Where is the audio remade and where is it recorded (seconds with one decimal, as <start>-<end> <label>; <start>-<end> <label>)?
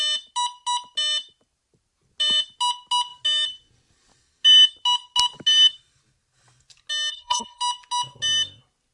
0.0-7.1 recorded; 7.1-7.6 remade; 7.6-8.9 recorded